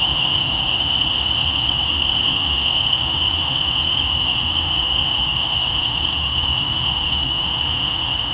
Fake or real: fake